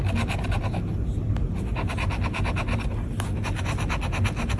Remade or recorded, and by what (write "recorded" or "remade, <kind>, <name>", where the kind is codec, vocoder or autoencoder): recorded